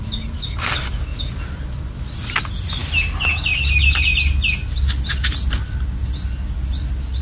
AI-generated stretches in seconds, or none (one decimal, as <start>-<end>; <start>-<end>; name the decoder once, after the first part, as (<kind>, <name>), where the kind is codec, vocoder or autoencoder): none